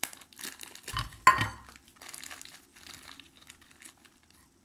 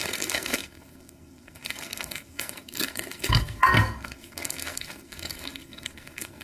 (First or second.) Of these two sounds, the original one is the first